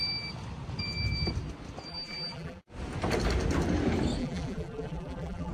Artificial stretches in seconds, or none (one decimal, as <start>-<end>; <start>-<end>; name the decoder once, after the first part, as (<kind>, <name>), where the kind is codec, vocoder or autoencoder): 1.9-2.6 (vocoder, BigVGAN v2); 4.2-5.5